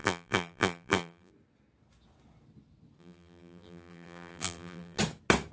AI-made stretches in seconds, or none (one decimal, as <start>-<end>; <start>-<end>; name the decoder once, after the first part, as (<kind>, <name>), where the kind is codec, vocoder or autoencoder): 0.0-1.3 (vocoder, BigVGAN v2); 3.0-5.0